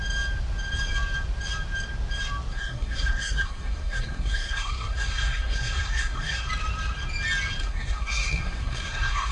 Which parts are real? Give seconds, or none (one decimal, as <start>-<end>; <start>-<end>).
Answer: 0.0-2.5; 6.5-7.6